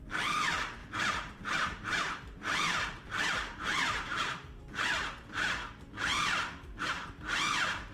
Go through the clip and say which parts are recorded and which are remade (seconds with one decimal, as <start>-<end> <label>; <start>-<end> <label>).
0.0-0.8 recorded; 0.8-4.6 remade; 4.6-7.9 recorded